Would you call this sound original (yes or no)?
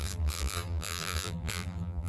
no